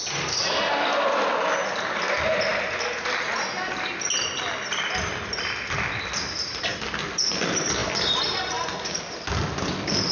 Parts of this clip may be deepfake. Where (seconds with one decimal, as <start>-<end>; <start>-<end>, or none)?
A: none